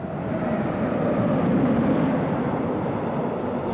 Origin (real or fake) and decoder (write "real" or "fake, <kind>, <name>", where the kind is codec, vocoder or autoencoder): fake, vocoder, BigVGAN v2